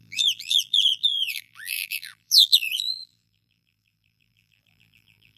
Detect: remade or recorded remade